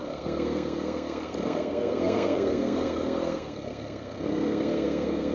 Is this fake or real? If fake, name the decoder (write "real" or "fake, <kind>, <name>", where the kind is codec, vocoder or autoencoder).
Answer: fake, codec, SNAC